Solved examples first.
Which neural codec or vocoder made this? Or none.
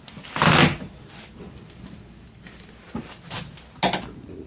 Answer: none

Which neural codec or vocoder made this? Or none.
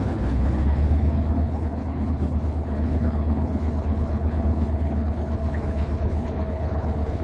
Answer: codec, HILCodec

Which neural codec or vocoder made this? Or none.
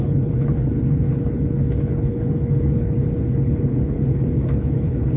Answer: codec, HILCodec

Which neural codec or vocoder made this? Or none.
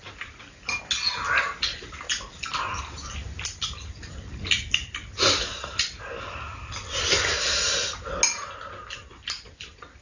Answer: none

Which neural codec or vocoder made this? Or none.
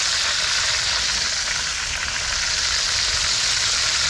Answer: none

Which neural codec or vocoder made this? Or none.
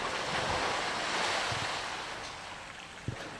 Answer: none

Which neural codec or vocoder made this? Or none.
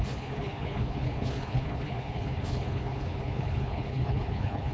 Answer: codec, HILCodec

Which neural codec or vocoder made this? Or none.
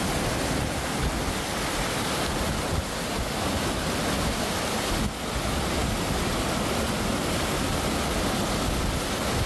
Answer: none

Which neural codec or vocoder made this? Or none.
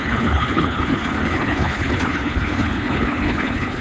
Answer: codec, HILCodec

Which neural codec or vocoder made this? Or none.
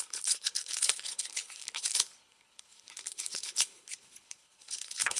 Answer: codec, HILCodec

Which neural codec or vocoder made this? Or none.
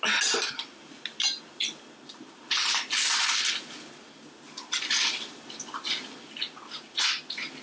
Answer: none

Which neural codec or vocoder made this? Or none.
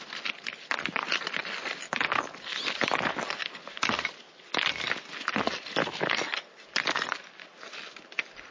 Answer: none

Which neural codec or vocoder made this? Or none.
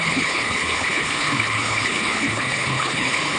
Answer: codec, HILCodec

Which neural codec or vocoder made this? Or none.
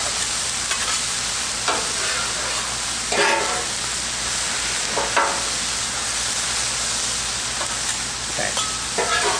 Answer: none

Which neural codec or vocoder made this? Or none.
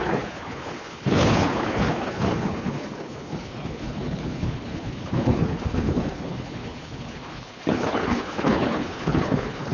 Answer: codec, HILCodec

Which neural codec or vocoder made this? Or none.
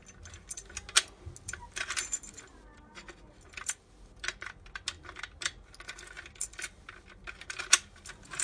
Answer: none